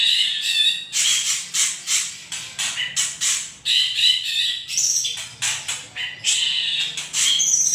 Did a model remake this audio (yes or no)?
yes